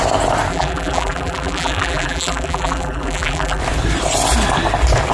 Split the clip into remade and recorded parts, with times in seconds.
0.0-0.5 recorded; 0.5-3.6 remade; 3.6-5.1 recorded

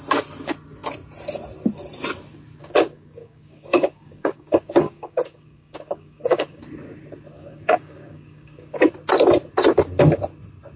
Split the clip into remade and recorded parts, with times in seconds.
0.0-2.6 recorded; 2.6-6.6 remade; 6.6-7.3 recorded; 7.3-8.8 remade; 8.8-10.8 recorded

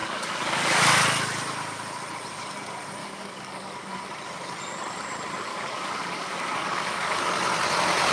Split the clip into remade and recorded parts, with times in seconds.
0.0-1.0 remade; 1.0-3.0 recorded; 3.0-4.1 remade; 4.1-5.5 recorded; 5.5-7.2 remade; 7.2-8.1 recorded

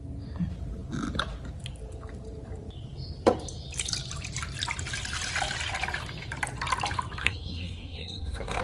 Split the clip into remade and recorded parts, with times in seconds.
0.0-7.2 recorded; 7.2-8.6 remade

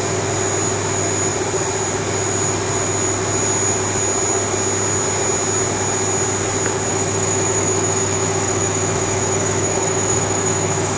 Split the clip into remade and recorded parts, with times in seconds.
0.0-6.9 recorded; 6.9-11.0 remade

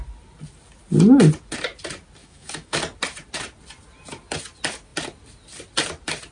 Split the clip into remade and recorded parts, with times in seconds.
0.0-2.2 recorded; 2.2-2.8 remade; 2.8-6.3 recorded

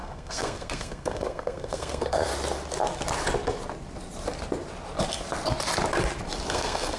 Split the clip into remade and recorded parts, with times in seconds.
0.0-2.3 remade; 2.3-6.5 recorded; 6.5-7.0 remade